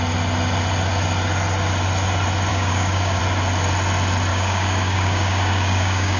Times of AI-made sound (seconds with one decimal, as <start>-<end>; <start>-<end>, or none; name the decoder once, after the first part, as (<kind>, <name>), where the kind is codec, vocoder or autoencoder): 2.5-3.2 (codec, DAC); 4.3-6.2